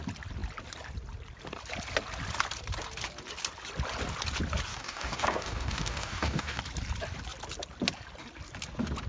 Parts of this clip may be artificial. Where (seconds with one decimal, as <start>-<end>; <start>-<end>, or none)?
4.7-6.6